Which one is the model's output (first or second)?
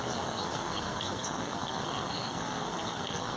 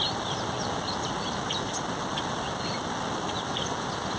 first